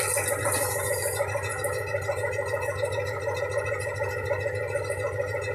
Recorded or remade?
recorded